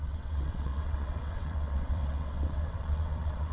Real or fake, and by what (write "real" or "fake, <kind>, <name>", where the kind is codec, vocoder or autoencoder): fake, vocoder, WaveNeXt